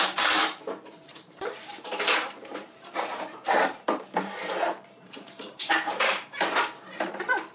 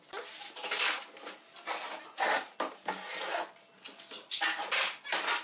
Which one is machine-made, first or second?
first